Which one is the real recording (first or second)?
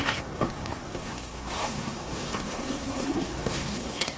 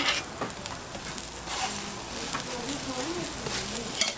second